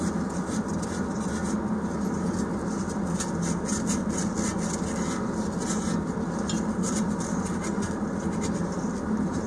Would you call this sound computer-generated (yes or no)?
no